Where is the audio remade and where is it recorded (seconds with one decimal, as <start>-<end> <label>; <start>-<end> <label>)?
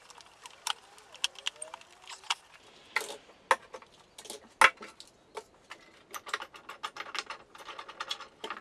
0.0-8.6 recorded